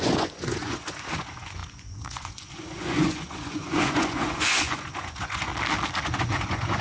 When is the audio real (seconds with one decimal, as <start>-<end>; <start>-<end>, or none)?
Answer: 5.5-6.0